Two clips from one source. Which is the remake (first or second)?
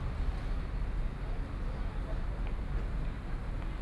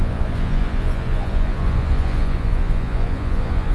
second